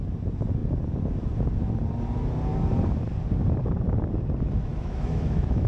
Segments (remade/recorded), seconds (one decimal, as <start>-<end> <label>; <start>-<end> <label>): 0.0-4.7 recorded; 4.7-5.7 remade